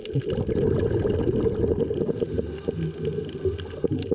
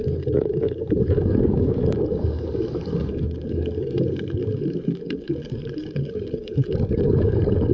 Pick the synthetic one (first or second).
second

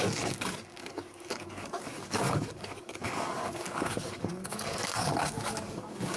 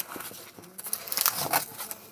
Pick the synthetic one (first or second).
first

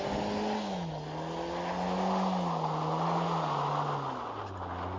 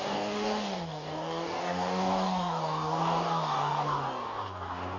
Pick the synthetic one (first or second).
second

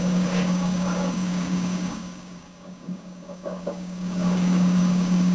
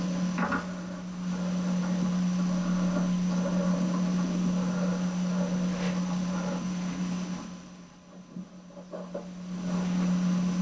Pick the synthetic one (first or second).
first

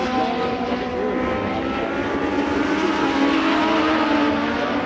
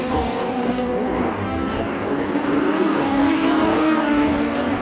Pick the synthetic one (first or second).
second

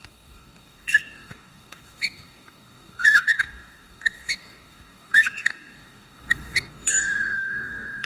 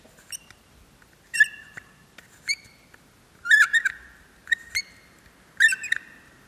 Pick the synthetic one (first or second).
first